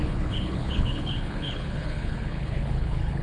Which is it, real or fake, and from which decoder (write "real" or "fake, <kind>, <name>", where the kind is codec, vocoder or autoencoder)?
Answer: fake, codec, HILCodec